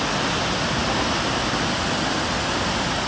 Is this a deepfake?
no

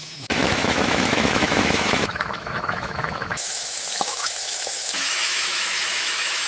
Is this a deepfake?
yes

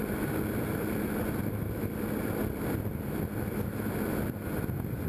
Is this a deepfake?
no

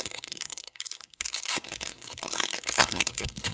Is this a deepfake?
yes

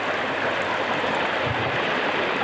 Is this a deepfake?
no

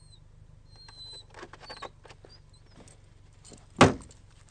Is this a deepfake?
no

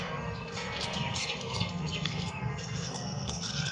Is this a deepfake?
yes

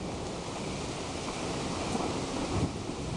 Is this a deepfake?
no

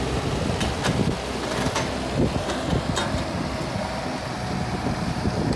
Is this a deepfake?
no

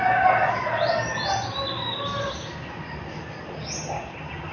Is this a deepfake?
no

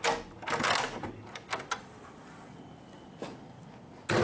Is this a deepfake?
no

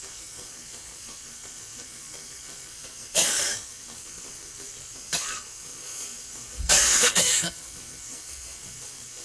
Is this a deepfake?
yes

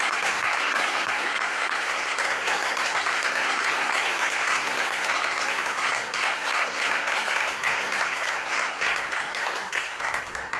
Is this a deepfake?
yes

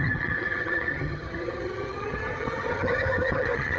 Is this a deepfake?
yes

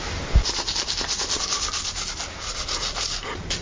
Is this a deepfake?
no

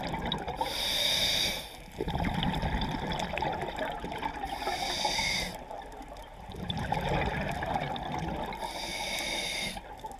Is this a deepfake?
no